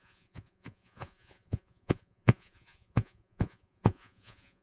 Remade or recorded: remade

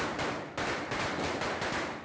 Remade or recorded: recorded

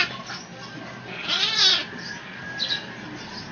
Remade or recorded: recorded